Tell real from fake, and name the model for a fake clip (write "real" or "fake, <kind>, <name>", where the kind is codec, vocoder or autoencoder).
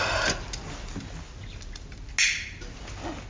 real